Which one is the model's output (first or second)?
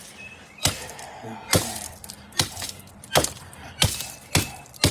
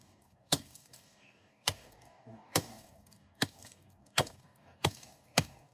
second